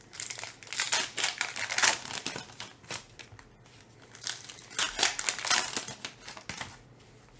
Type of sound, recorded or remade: recorded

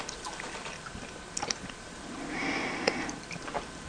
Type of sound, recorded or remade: recorded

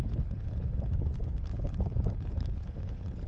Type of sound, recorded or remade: remade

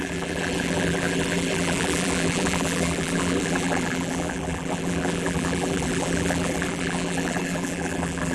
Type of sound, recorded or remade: remade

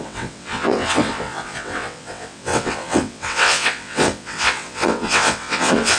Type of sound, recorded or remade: remade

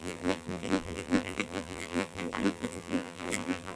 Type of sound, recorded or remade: remade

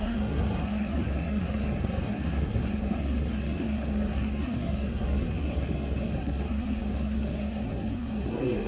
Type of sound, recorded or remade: remade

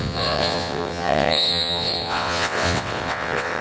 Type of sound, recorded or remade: remade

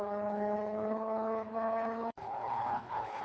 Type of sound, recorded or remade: remade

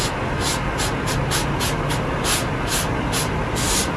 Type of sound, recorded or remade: recorded